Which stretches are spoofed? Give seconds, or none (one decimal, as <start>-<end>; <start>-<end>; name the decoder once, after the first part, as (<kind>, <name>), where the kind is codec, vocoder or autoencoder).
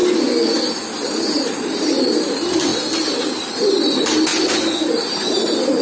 1.1-4.3 (vocoder, BigVGAN v2); 5.1-5.8